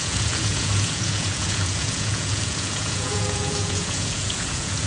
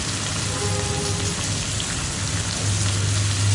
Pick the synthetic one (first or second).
first